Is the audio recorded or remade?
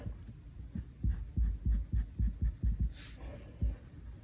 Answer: recorded